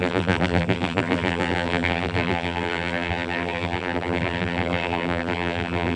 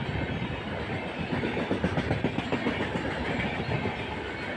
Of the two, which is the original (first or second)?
second